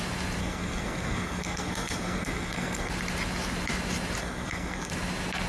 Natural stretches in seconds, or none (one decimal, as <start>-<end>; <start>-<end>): 0.0-0.4; 2.9-4.2; 4.9-5.5